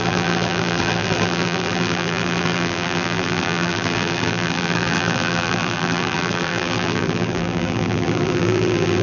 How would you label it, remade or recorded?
remade